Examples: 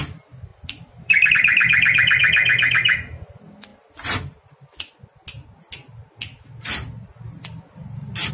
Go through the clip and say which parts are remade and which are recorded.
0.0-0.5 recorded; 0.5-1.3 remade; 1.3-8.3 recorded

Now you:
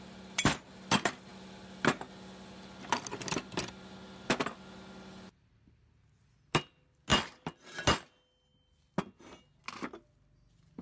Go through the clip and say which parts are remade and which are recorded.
0.0-10.8 recorded

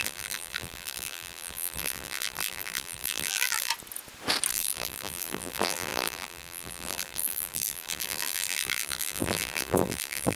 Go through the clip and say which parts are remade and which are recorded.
0.0-3.7 remade; 3.7-4.5 recorded; 4.5-10.4 remade

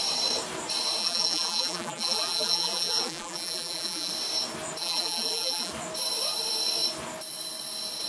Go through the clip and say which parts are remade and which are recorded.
0.0-1.0 recorded; 1.0-4.1 remade; 4.1-4.8 recorded; 4.8-5.7 remade; 5.7-8.1 recorded

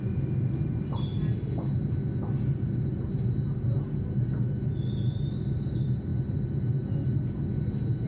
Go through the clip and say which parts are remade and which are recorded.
0.0-8.1 recorded